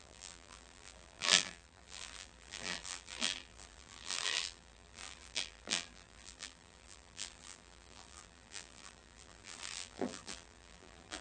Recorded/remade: remade